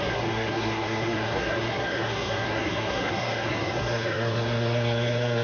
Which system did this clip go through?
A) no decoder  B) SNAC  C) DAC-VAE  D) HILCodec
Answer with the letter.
B